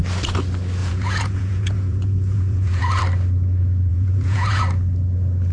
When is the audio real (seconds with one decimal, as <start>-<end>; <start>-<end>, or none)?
0.0-0.8; 3.0-3.9; 4.6-5.5